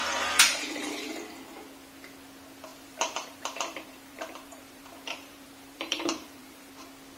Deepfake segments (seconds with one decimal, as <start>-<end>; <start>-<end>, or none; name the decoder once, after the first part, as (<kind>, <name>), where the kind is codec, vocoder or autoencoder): 0.0-1.1 (vocoder, BigVGAN v2); 2.7-6.7